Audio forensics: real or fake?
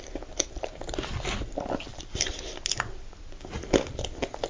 real